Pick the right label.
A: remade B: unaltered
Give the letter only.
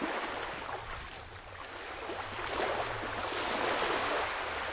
B